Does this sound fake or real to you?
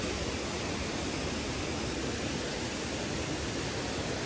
real